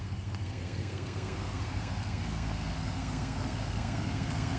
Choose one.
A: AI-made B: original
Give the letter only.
A